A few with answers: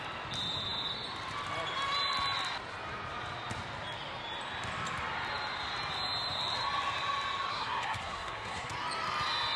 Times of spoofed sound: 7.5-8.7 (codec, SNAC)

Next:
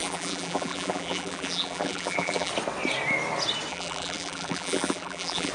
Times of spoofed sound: 0.0-2.5 (vocoder, BigVGAN v2); 3.7-5.5

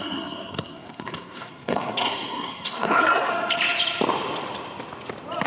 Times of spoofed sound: 0.0-3.3 (codec, SNAC)